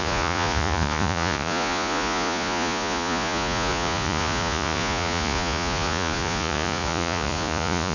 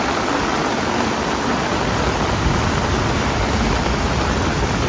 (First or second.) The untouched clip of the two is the second